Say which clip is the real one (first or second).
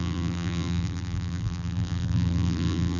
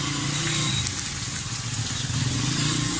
second